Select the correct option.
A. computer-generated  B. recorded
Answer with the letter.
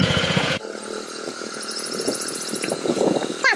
A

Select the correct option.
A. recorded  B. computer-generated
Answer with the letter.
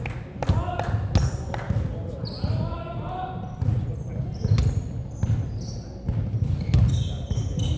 A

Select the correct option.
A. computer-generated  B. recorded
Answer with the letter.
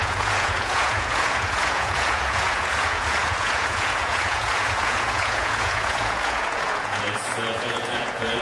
A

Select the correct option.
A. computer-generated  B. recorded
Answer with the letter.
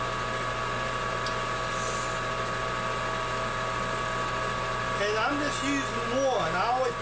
B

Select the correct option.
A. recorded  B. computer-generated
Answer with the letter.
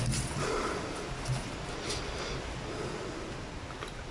A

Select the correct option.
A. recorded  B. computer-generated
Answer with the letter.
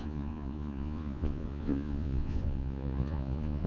B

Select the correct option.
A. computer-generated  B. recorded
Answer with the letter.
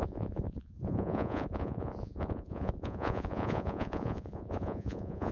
A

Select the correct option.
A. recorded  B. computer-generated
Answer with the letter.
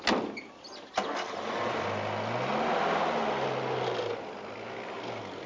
A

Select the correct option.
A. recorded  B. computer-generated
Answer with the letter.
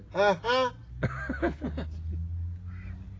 A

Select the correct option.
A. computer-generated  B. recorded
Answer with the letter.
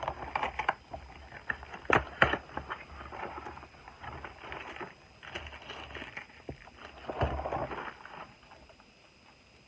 B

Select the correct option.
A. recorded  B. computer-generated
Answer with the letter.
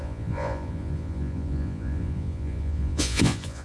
B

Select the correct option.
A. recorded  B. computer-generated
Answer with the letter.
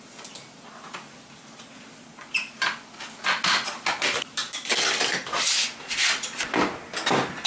A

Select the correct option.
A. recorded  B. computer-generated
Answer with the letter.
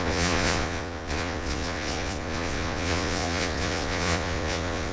B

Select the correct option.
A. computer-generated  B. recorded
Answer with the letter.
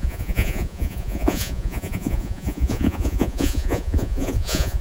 A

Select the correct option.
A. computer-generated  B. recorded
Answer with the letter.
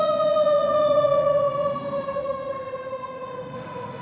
A